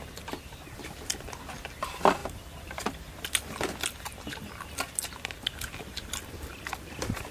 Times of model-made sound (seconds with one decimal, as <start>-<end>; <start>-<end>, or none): none